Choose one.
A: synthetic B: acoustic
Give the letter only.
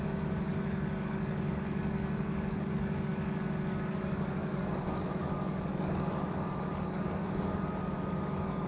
A